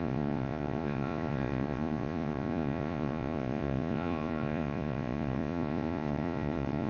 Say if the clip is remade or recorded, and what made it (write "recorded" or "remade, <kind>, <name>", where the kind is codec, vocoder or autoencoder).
remade, vocoder, Vocos